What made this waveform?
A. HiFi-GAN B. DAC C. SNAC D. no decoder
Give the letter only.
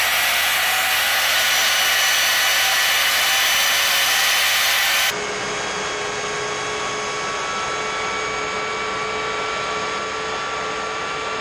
D